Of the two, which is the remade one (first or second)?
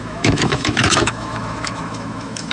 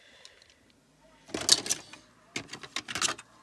first